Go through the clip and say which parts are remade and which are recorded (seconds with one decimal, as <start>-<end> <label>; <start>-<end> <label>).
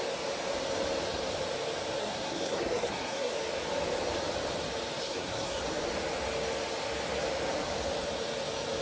0.0-2.0 recorded; 2.0-3.3 remade; 3.3-5.0 recorded; 5.0-5.6 remade; 5.6-8.8 recorded